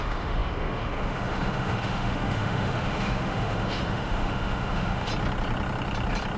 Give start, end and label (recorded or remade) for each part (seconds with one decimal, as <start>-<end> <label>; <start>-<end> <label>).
0.0-5.1 remade; 5.1-6.4 recorded